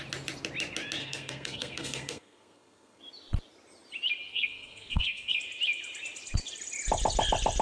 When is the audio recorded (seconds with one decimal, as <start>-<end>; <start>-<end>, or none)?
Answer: 0.0-1.0; 3.0-4.3; 5.4-7.6